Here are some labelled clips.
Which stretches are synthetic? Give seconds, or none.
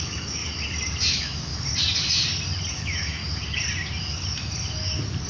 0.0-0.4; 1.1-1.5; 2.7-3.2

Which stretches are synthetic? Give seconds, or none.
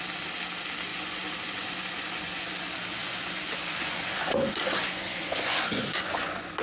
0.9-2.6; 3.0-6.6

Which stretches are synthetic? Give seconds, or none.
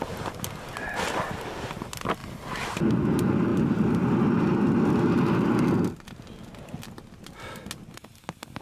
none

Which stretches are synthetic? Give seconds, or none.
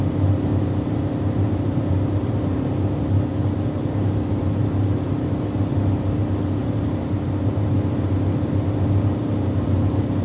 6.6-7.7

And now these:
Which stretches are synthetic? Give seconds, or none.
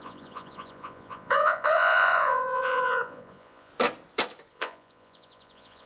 0.0-3.7; 4.5-5.9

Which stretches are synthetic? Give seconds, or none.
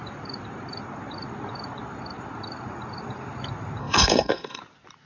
3.8-4.6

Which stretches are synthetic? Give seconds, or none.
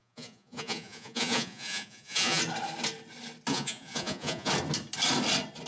0.0-2.4; 3.5-4.5